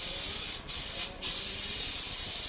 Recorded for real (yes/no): yes